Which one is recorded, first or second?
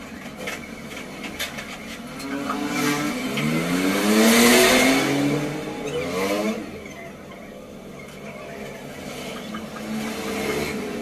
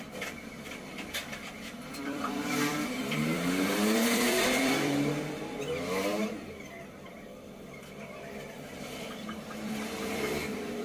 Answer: first